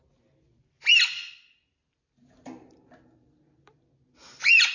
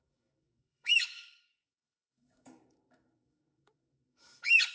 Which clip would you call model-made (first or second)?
second